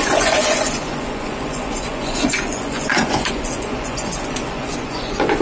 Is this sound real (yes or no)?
no